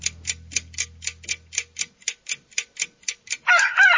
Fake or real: real